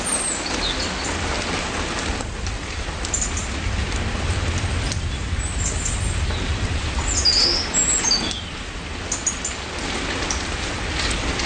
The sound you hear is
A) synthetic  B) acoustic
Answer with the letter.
B